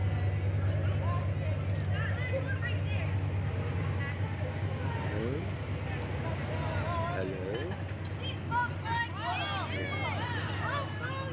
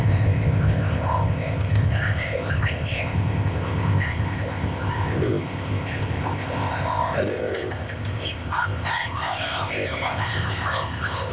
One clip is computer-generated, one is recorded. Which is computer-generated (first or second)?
second